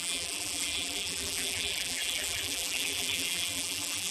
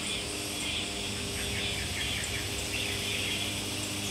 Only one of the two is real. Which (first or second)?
second